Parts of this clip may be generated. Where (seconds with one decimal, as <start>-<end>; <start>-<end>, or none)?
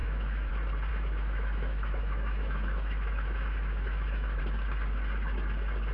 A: 0.0-0.5; 0.9-4.4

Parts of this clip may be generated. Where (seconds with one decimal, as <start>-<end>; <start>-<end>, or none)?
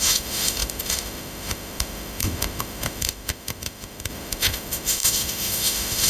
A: 0.0-6.1